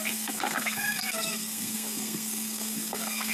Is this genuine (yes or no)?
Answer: no